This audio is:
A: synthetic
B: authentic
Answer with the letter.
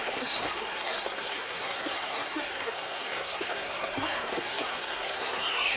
A